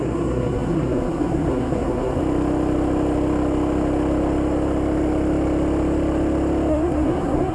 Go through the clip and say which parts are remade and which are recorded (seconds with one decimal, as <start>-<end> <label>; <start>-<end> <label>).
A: 0.0-2.2 remade; 2.2-6.7 recorded; 6.7-7.5 remade